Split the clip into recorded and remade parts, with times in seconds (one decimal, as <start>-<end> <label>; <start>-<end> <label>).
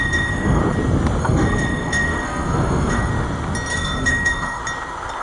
0.0-0.6 remade; 0.6-1.2 recorded; 1.2-3.1 remade; 3.1-3.7 recorded; 3.7-4.6 remade; 4.6-5.2 recorded